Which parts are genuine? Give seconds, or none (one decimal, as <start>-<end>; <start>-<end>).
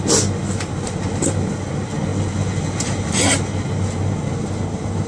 0.0-5.1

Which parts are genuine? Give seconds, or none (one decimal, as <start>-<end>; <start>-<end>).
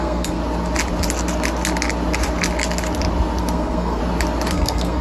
0.4-3.4; 4.0-4.5